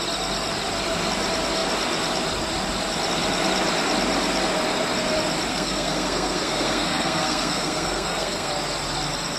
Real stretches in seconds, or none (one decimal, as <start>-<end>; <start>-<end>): 0.0-5.5; 8.5-9.4